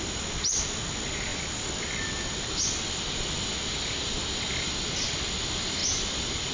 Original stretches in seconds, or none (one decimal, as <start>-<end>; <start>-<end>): 0.0-6.5